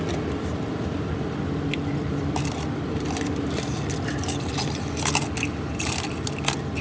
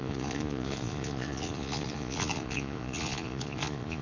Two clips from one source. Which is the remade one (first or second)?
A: second